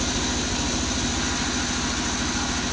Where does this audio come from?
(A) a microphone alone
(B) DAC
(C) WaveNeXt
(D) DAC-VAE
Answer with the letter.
A